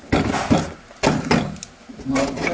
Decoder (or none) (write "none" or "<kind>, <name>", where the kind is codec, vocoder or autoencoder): none